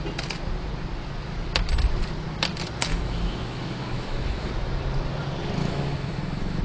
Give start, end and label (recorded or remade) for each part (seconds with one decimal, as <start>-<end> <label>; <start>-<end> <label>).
0.0-2.9 recorded; 2.9-4.5 remade; 4.5-5.6 recorded; 5.6-6.6 remade